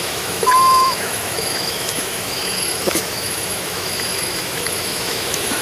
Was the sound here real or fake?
fake